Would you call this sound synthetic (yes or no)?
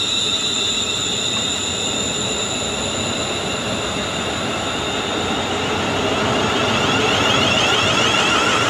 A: no